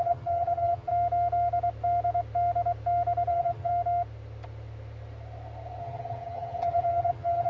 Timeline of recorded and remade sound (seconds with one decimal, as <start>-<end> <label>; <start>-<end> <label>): 0.0-0.9 remade; 0.9-3.3 recorded; 3.3-3.7 remade; 3.7-5.8 recorded; 5.8-7.5 remade